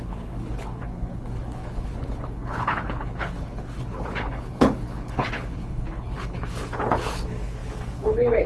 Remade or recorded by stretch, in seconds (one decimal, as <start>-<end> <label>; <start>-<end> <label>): 0.0-8.5 remade